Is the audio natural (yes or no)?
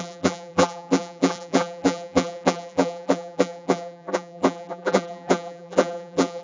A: no